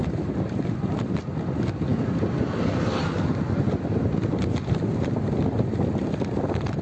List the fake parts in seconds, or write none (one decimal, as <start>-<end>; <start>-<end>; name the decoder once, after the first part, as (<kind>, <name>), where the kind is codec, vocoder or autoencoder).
none